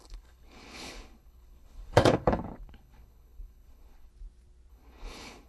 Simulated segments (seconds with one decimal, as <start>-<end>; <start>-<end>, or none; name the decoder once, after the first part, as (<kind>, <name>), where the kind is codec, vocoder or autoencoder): 0.0-4.1 (codec, HILCodec); 4.7-5.5